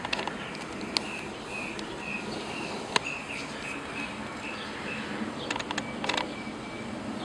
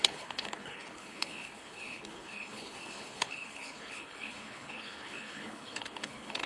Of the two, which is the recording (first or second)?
first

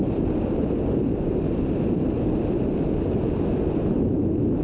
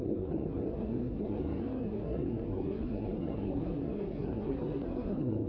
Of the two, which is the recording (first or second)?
first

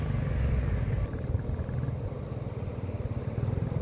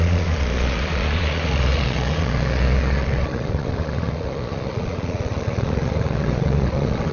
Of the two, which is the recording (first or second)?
first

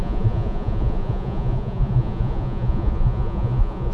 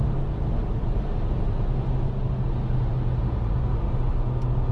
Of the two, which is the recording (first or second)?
second